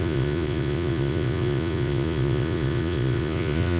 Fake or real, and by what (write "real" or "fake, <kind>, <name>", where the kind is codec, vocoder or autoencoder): fake, vocoder, Vocos